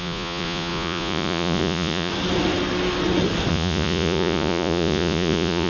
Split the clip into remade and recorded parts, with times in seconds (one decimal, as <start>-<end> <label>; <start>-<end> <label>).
0.0-2.1 remade; 2.1-3.5 recorded; 3.5-5.7 remade